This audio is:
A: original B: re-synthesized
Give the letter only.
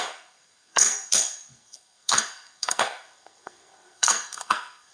B